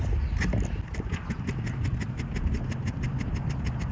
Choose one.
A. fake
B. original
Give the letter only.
B